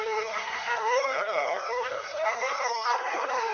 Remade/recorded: remade